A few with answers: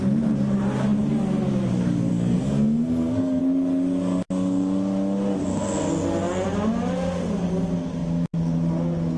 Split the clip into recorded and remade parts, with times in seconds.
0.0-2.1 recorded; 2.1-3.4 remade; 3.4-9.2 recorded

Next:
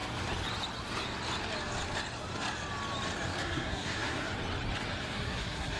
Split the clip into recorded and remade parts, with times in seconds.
0.0-3.4 recorded; 3.4-4.3 remade; 4.3-5.0 recorded; 5.0-5.8 remade

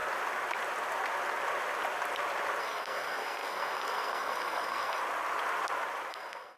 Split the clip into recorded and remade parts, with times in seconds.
0.0-2.6 recorded; 2.6-5.0 remade; 5.0-6.1 recorded; 6.1-6.6 remade

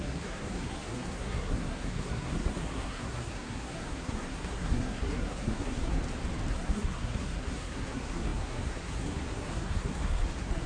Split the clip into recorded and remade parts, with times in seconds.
0.0-6.0 remade; 6.0-6.5 recorded; 6.5-10.7 remade

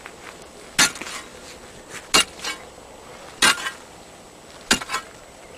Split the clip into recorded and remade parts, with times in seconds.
0.0-5.6 recorded

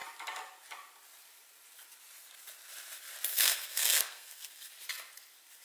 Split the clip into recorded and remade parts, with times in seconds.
0.0-3.3 recorded; 3.3-4.7 remade; 4.7-5.6 recorded

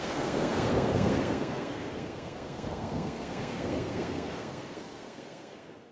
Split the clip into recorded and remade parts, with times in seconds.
0.0-5.9 remade

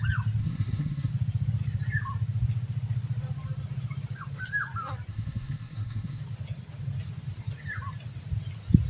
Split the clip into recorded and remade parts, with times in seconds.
0.0-0.4 recorded; 0.4-1.1 remade; 1.1-5.1 recorded; 5.1-6.2 remade; 6.2-8.9 recorded